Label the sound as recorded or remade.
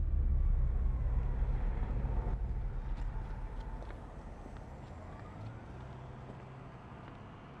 recorded